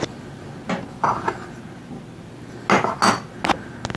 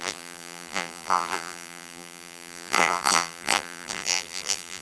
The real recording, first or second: first